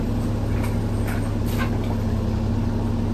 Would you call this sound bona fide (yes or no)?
yes